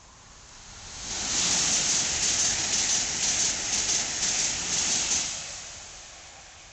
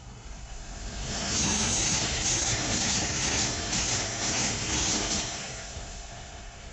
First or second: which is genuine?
first